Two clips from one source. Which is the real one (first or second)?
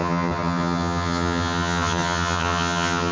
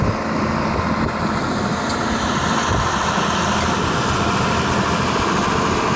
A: second